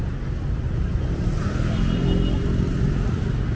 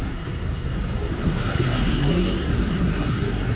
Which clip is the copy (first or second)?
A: second